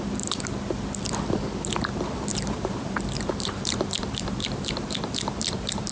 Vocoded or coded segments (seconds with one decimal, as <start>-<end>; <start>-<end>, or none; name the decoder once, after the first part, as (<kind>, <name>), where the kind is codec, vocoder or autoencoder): 2.3-5.9 (vocoder, BigVGAN v2)